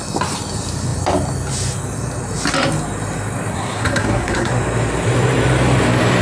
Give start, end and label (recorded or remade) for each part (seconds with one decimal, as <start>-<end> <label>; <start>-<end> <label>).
0.0-3.5 recorded; 3.5-4.5 remade; 4.5-6.2 recorded